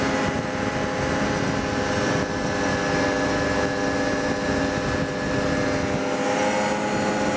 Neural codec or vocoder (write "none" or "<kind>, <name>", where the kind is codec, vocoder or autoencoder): none